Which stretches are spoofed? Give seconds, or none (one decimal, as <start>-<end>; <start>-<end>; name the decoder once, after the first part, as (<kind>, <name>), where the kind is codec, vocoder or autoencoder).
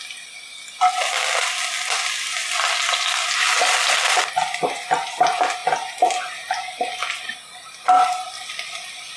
none